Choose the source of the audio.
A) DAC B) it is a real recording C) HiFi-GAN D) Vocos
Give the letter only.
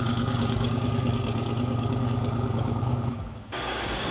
A